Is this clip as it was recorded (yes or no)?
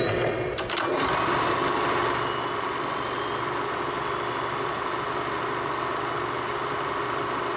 yes